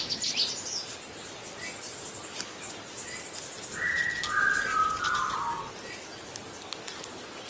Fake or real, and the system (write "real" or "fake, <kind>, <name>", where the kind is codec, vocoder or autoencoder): real